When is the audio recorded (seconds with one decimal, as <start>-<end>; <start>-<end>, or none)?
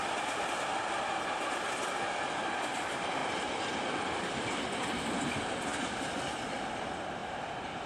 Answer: 0.0-3.2; 4.2-5.7; 6.7-7.9